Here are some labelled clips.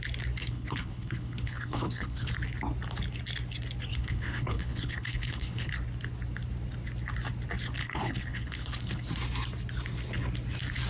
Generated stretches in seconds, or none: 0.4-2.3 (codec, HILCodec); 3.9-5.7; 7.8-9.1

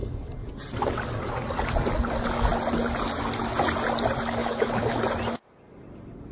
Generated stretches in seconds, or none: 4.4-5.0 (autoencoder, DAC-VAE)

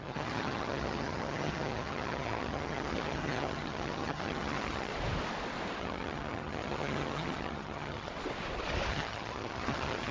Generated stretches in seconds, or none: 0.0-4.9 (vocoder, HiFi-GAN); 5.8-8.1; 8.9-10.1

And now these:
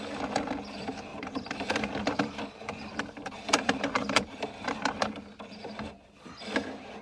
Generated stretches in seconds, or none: 1.1-5.3 (vocoder, BigVGAN v2)

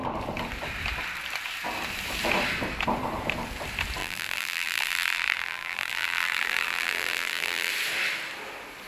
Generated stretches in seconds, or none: 4.0-7.7 (vocoder, BigVGAN v2)